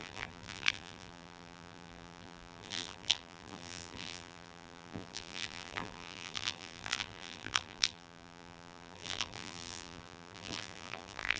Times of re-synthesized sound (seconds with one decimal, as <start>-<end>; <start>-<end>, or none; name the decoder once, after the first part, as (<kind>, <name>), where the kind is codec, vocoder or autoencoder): 0.0-11.4 (vocoder, BigVGAN v2)